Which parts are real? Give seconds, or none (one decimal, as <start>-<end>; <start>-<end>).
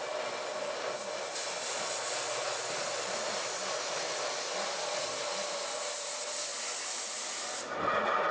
0.0-8.3